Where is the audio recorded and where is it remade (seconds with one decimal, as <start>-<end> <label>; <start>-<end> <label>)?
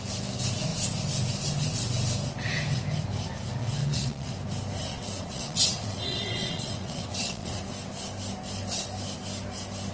0.0-3.6 recorded; 3.6-4.3 remade; 4.3-4.9 recorded; 4.9-7.6 remade; 7.6-9.9 recorded